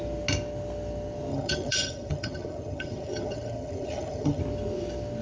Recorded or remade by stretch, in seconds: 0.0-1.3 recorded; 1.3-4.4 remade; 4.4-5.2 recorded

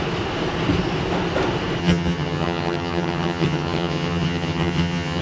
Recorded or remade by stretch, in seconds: 0.0-1.8 recorded; 1.8-5.2 remade

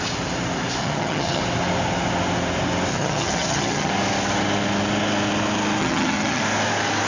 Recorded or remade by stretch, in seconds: 0.0-0.8 recorded; 0.8-1.4 remade; 1.4-2.9 recorded; 2.9-3.9 remade; 3.9-5.8 recorded; 5.8-6.4 remade; 6.4-7.1 recorded

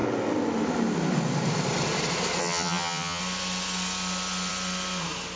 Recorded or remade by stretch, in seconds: 0.0-2.4 recorded; 2.4-3.2 remade; 3.2-5.4 recorded

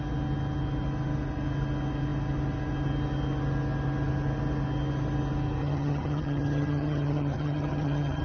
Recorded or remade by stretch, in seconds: 0.0-5.6 recorded; 5.6-8.2 remade

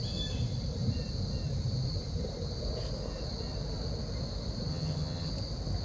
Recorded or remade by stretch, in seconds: 0.0-4.7 recorded; 4.7-5.3 remade; 5.3-5.8 recorded

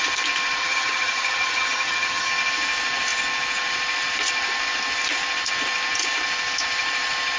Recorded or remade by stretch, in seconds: 0.0-0.6 recorded; 0.6-2.3 remade; 2.3-7.4 recorded